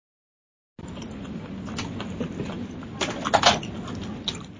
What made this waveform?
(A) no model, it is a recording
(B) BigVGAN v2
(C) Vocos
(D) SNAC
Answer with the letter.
A